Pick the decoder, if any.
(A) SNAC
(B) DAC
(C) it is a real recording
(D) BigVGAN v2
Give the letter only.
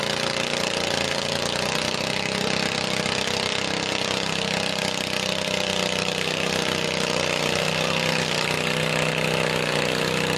C